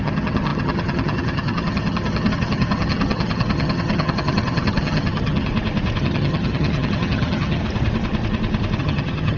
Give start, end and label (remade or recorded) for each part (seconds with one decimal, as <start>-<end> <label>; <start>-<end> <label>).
0.0-5.5 remade; 5.5-6.0 recorded; 6.0-7.6 remade; 7.6-8.8 recorded; 8.8-9.4 remade